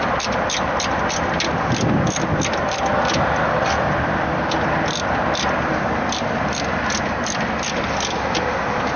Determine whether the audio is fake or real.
real